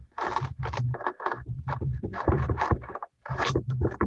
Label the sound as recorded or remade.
remade